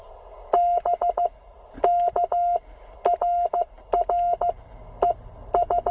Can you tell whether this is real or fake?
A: real